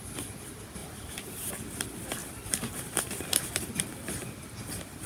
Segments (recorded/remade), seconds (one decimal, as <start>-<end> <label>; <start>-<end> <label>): 0.0-0.8 recorded; 0.8-1.5 remade; 1.5-2.2 recorded; 2.2-3.7 remade; 3.7-5.1 recorded